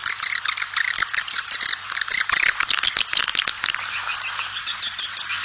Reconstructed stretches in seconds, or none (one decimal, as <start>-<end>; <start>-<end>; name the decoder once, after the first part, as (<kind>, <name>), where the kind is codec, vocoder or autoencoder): none